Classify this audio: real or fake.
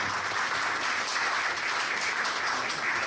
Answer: real